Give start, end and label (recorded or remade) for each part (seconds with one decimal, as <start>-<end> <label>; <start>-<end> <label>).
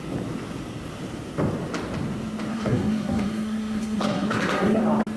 0.0-2.5 recorded; 2.5-4.8 remade; 4.8-5.2 recorded